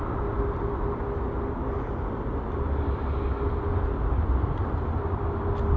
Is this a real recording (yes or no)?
yes